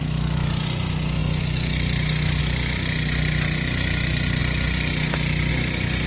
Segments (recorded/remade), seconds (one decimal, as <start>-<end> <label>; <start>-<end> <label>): 0.0-6.1 recorded